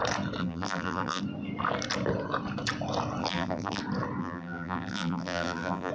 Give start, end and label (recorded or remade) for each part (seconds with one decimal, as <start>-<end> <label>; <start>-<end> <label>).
0.0-0.4 recorded; 0.4-1.2 remade; 1.2-3.2 recorded; 3.2-3.8 remade; 3.8-4.2 recorded; 4.2-5.9 remade